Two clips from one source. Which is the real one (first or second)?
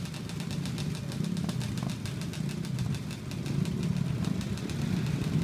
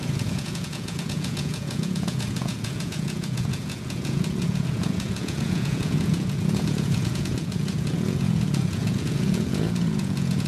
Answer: first